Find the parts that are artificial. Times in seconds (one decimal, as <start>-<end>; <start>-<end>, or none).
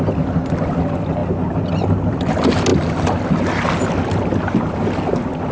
none